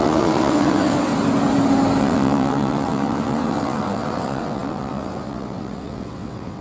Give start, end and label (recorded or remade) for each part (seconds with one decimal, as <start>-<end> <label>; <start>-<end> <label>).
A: 0.0-1.1 remade; 1.1-2.0 recorded; 2.0-6.6 remade